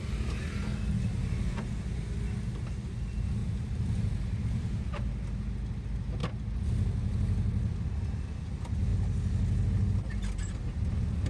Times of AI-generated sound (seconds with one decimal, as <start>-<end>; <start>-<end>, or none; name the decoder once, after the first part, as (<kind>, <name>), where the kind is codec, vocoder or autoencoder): 3.4-5.1 (vocoder, BigVGAN v2)